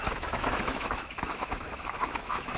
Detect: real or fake fake